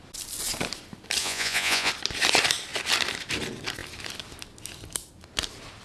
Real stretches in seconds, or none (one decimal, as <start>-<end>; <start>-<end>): 0.0-1.2; 1.9-5.8